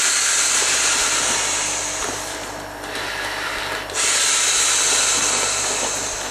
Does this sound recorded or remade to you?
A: remade